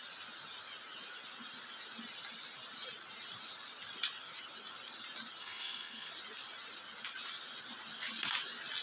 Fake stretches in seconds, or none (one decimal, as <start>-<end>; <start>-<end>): 5.4-6.1